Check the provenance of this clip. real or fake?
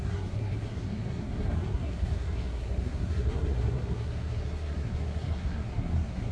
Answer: fake